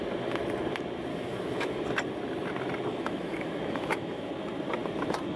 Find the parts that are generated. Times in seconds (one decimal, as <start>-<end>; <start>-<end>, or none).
1.1-1.8; 2.9-4.3